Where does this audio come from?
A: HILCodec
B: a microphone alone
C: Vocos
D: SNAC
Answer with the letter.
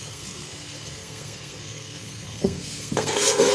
D